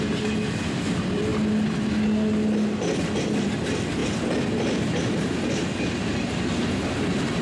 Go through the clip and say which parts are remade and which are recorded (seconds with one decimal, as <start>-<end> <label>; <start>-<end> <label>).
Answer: 0.0-7.4 recorded